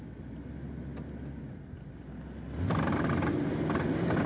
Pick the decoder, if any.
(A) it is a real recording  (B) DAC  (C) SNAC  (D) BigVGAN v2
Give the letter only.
A